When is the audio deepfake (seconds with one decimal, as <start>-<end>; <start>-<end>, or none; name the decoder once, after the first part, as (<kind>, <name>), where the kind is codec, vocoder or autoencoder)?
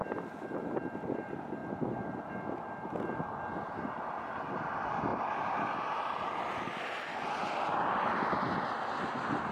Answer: none